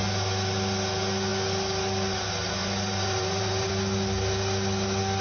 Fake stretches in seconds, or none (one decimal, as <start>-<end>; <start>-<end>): 2.6-3.7